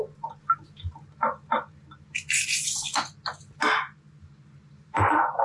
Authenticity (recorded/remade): recorded